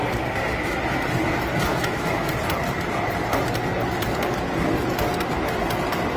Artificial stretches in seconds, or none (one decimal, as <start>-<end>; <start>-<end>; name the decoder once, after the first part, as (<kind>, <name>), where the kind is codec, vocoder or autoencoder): 1.7-2.3 (autoencoder, DAC-VAE)